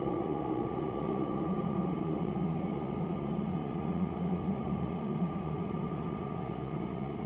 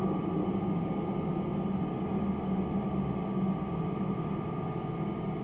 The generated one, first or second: first